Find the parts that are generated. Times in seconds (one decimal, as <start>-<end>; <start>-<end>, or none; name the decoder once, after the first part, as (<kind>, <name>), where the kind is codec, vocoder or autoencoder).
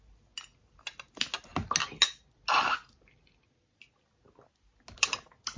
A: none